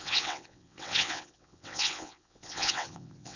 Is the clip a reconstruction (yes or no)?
yes